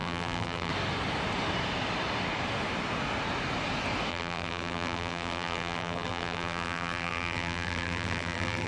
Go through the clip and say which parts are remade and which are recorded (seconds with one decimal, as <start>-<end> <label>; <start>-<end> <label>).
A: 0.0-0.7 remade; 0.7-4.1 recorded; 4.1-8.7 remade